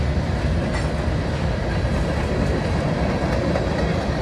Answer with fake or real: real